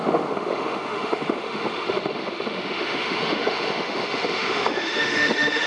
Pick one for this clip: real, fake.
fake